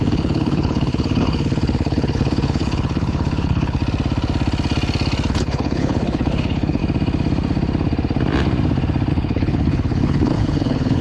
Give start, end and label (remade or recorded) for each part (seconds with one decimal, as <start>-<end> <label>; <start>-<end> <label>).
0.0-3.8 remade; 3.8-5.3 recorded; 5.3-6.8 remade; 6.8-9.1 recorded; 9.1-11.0 remade